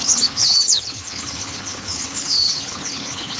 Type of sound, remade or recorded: remade